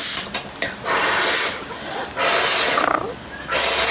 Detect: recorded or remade recorded